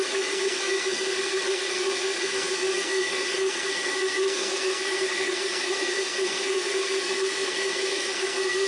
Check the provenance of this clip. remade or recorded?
remade